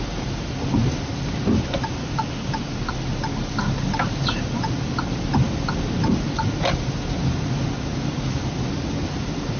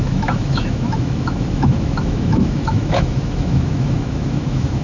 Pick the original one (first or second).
first